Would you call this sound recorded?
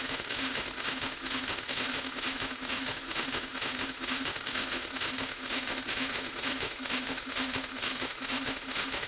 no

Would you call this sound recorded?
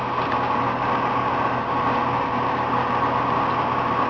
yes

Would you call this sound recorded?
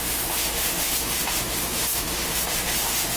no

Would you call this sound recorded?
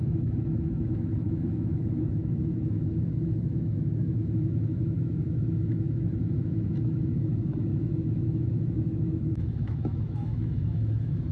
no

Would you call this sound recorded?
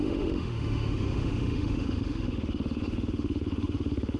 no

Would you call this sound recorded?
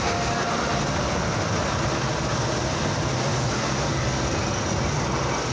yes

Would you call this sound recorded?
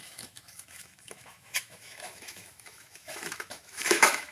no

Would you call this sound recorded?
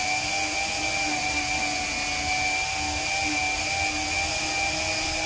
yes